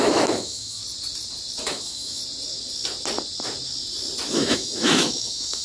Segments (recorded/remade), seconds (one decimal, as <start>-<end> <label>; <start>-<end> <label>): 0.0-0.8 remade; 0.8-1.6 recorded; 1.6-2.2 remade; 2.2-4.3 recorded; 4.3-5.6 remade